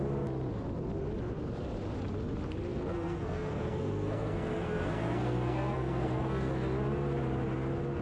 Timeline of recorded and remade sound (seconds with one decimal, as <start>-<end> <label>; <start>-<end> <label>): 0.0-2.7 recorded; 2.7-6.5 remade; 6.5-8.0 recorded